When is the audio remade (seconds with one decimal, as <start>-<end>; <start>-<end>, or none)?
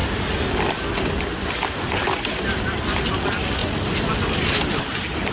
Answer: none